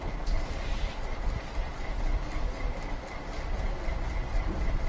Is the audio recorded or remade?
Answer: recorded